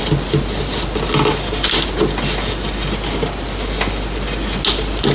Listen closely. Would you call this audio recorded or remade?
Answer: recorded